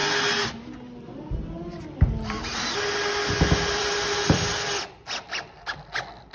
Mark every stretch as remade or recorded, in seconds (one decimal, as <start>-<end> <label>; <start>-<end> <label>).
0.0-6.3 recorded